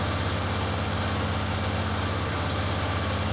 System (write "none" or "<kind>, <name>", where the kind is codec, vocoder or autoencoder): none